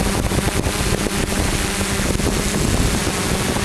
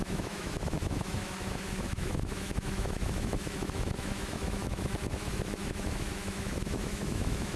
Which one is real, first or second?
first